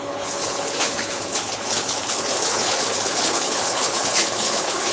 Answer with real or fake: fake